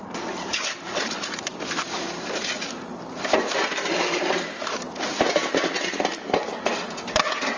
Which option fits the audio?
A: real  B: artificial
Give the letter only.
B